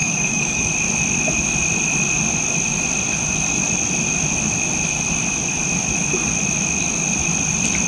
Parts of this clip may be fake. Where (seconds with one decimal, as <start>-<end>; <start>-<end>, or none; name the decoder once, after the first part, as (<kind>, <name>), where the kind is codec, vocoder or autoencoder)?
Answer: 0.0-0.7 (codec, DAC)